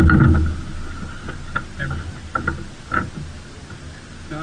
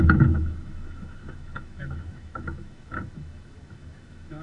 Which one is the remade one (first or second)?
second